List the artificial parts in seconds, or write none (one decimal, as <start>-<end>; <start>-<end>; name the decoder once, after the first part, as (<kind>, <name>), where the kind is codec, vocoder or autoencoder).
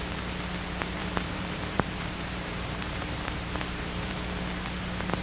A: 1.0-4.1 (vocoder, BigVGAN v2)